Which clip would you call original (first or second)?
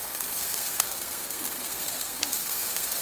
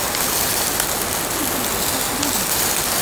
second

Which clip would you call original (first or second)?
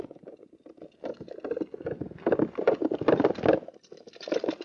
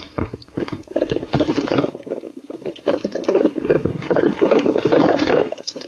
first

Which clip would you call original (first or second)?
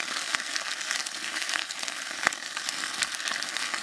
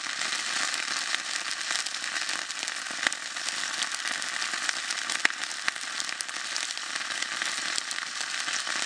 second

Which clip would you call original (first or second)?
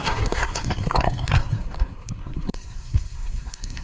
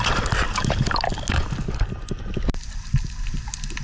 second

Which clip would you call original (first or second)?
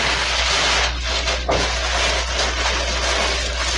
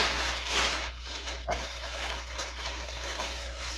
first